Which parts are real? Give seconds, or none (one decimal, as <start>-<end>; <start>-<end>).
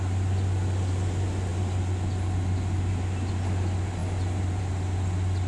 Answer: 0.0-5.5